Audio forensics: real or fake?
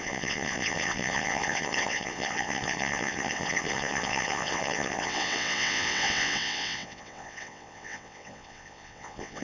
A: fake